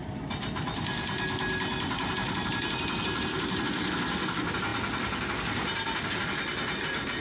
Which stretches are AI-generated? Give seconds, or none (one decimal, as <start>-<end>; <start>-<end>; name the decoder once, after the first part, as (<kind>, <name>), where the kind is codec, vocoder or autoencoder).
0.0-0.8 (vocoder, BigVGAN v2)